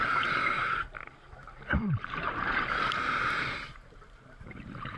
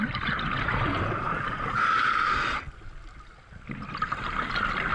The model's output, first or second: first